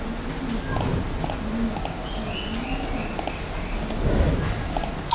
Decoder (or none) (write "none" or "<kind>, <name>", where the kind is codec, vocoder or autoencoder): none